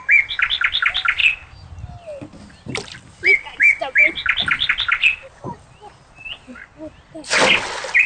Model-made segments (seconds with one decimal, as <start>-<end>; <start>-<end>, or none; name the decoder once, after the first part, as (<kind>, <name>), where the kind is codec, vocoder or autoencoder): none